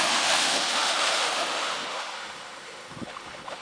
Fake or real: fake